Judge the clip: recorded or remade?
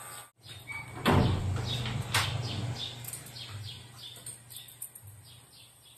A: recorded